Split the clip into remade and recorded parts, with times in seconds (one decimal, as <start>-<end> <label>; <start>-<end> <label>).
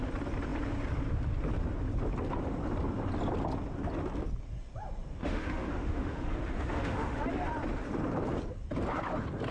0.0-5.2 recorded; 5.2-7.2 remade; 7.2-9.5 recorded